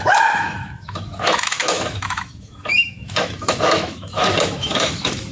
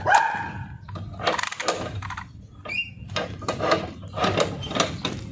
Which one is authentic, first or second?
second